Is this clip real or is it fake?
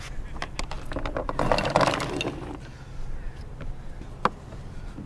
real